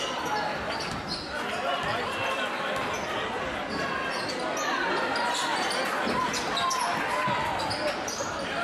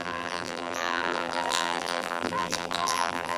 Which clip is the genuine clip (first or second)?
first